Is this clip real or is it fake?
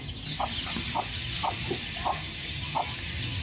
real